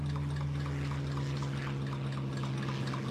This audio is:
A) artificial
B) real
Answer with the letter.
B